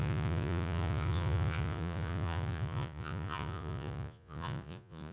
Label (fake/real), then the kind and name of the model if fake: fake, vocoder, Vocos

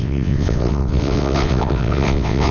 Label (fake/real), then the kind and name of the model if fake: fake, vocoder, WaveNeXt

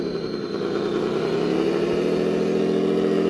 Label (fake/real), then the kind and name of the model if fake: real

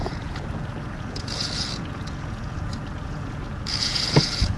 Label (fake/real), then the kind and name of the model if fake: fake, vocoder, Vocos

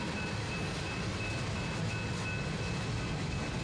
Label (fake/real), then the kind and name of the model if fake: real